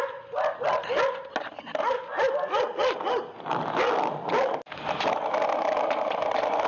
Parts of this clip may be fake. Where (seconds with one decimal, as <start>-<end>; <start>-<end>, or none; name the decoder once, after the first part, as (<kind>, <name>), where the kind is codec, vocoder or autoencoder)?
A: none

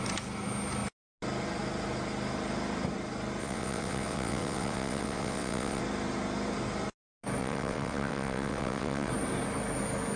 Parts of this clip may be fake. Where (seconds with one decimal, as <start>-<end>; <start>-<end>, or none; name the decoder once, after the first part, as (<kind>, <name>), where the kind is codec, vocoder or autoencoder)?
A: 3.4-5.8 (vocoder, WaveNeXt); 7.4-9.1

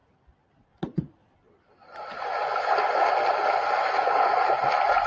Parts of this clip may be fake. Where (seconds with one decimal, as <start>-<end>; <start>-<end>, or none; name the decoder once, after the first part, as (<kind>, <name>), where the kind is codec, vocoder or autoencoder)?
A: none

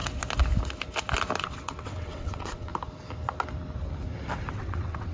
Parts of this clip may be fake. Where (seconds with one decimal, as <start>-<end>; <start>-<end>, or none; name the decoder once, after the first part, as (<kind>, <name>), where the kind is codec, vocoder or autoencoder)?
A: 1.4-2.7 (vocoder, WaveNeXt); 4.5-5.1

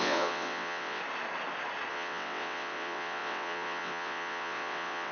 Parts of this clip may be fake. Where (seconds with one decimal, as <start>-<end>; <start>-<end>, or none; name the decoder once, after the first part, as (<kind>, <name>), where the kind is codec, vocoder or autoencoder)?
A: 0.0-1.0 (vocoder, WaveNeXt); 1.9-5.1